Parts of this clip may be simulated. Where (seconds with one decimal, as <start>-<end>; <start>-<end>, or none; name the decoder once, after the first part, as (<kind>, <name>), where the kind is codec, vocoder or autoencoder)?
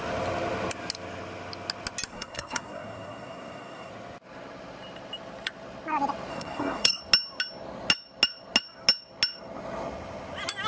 2.1-3.9 (codec, SNAC); 6.3-7.0